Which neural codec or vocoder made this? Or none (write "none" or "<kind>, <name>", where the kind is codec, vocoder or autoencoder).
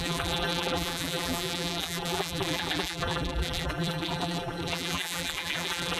vocoder, BigVGAN v2